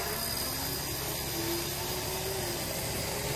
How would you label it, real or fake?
real